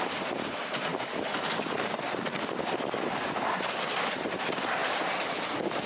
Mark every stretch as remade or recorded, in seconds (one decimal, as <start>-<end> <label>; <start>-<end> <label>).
0.0-5.9 recorded

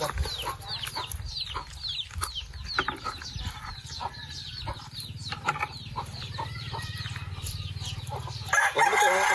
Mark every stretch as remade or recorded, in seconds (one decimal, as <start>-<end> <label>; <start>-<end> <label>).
0.0-3.7 recorded; 3.7-4.6 remade; 4.6-9.3 recorded

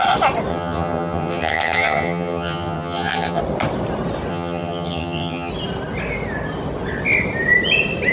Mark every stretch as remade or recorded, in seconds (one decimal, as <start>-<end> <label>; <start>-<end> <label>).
0.0-0.5 recorded; 0.5-3.4 remade; 3.4-4.3 recorded; 4.3-5.5 remade; 5.5-8.1 recorded

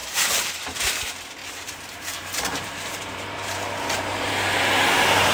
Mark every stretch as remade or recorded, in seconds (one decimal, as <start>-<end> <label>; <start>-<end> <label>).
0.0-0.6 remade; 0.6-1.4 recorded; 1.4-4.3 remade; 4.3-5.3 recorded

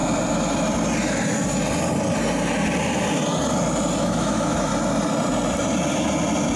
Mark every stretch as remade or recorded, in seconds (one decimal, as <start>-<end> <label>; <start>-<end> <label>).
0.0-4.0 recorded; 4.0-4.7 remade; 4.7-6.6 recorded

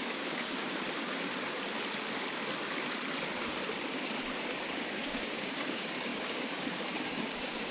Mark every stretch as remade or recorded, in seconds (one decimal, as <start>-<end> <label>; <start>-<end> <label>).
0.0-0.5 remade; 0.5-4.8 recorded; 4.8-7.7 remade

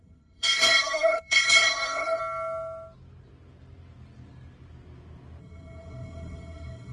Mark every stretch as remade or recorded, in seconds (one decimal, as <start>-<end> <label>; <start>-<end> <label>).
0.0-2.2 remade; 2.2-5.4 recorded; 5.4-6.9 remade